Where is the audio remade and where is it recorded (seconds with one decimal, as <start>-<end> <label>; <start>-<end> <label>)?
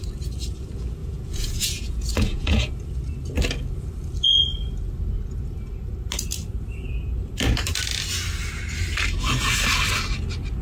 0.0-1.0 recorded; 1.0-2.7 remade; 2.7-10.6 recorded